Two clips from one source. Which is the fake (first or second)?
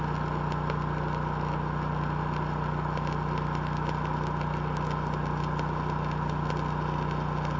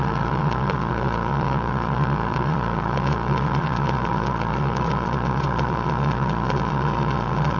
second